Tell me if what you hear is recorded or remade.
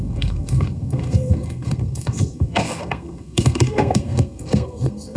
remade